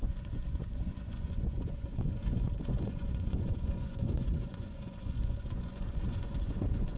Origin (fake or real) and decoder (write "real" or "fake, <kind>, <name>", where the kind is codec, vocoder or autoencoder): fake, vocoder, Vocos